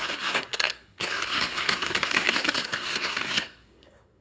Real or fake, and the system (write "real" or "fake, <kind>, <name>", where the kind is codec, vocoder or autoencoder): fake, codec, SNAC